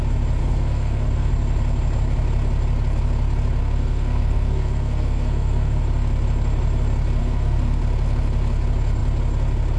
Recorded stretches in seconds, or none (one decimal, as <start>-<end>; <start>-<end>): 0.0-0.4; 1.3-3.6; 5.8-7.2; 7.8-9.8